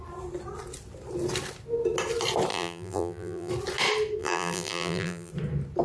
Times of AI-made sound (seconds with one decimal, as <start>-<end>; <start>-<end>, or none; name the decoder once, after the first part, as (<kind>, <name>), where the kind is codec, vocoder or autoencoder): 2.5-3.5 (vocoder, BigVGAN v2); 4.2-5.3